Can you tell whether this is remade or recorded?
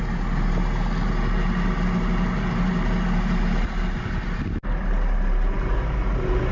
recorded